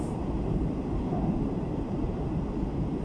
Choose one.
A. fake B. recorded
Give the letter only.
A